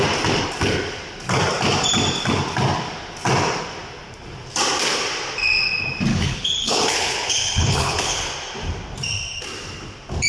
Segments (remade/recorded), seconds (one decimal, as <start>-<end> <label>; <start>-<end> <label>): 0.0-6.1 recorded; 6.1-8.3 remade; 8.3-10.3 recorded